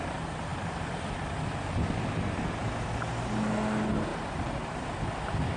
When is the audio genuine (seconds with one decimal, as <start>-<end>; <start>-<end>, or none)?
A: 0.0-0.5; 2.5-5.6